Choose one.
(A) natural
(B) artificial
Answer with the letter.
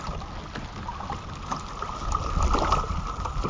A